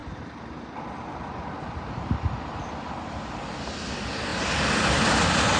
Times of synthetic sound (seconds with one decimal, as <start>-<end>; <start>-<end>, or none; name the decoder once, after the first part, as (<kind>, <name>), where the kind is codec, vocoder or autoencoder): 0.0-3.4 (vocoder, BigVGAN v2)

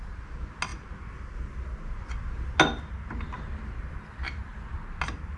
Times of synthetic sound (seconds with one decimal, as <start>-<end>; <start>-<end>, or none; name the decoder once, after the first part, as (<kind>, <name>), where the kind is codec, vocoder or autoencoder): none

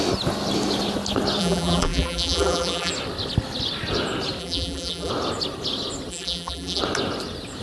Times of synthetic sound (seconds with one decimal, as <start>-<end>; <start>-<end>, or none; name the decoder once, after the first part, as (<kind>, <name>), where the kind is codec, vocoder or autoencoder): 1.4-2.9 (vocoder, BigVGAN v2); 4.4-5.1; 6.1-6.8

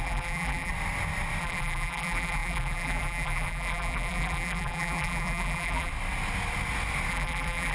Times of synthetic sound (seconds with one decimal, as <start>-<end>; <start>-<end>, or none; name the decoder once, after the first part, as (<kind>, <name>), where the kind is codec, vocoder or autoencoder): 0.0-0.7 (vocoder, BigVGAN v2); 1.4-5.9; 7.1-7.7

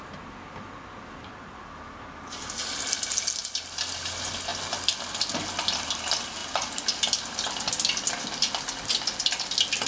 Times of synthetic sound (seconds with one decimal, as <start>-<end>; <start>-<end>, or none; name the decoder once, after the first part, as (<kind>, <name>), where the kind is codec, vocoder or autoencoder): none

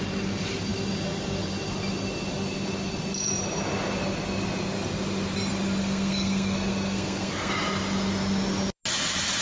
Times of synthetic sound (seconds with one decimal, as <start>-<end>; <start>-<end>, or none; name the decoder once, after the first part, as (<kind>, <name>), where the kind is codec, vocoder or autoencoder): 5.8-7.5 (codec, SNAC)